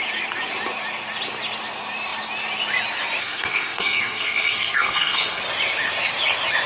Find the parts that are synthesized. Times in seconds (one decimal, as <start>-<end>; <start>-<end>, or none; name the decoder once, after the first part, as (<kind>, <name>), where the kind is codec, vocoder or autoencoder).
3.2-5.4 (codec, SNAC)